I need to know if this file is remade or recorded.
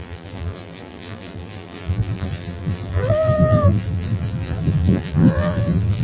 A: remade